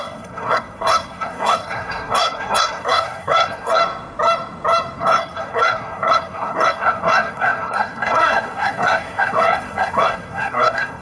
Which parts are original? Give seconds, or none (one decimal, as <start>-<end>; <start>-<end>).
3.8-5.0